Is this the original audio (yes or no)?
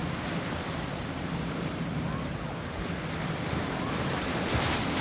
no